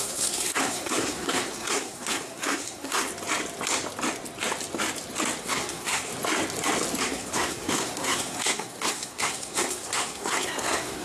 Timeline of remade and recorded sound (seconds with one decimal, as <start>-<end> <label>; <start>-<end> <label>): 0.0-3.1 remade; 3.1-5.4 recorded; 5.4-6.1 remade; 6.1-7.0 recorded; 7.0-11.0 remade